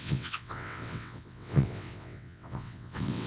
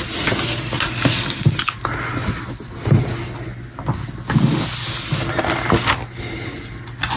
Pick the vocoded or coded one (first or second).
first